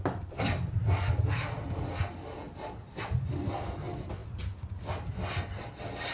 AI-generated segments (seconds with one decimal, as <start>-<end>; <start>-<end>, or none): none

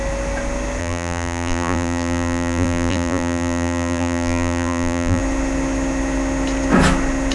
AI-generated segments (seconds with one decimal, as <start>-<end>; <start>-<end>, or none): 0.8-5.2